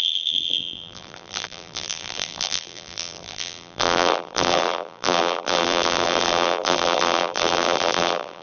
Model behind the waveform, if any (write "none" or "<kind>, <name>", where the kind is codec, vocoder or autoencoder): vocoder, BigVGAN v2